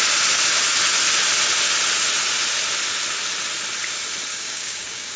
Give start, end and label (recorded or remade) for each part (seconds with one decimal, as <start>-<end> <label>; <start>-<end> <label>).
0.0-4.3 recorded; 4.3-5.2 remade